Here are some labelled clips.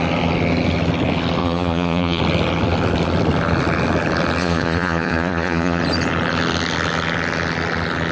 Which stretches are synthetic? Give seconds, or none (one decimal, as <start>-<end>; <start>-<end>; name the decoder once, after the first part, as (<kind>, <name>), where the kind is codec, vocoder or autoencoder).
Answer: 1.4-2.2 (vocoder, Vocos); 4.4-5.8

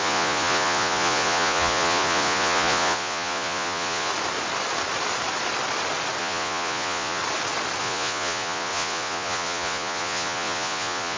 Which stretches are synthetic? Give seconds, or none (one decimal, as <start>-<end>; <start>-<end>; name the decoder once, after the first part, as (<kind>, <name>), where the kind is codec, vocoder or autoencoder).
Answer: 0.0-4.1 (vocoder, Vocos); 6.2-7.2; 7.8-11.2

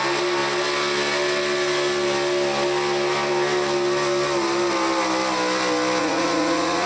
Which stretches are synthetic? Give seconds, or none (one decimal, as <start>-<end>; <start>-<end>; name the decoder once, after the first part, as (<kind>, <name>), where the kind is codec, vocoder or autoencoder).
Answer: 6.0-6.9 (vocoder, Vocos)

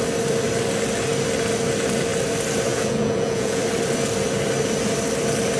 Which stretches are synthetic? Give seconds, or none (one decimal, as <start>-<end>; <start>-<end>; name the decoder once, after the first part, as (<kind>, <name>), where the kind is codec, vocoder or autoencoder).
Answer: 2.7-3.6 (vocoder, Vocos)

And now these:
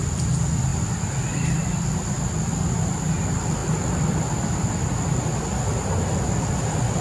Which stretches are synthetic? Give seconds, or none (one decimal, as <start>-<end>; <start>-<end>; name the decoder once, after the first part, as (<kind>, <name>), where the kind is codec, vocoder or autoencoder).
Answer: none

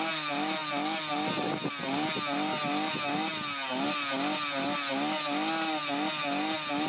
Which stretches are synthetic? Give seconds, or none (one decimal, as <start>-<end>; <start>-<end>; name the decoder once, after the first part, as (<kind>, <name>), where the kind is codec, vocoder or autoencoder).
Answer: none